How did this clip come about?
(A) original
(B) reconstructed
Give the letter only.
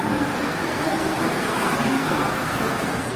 B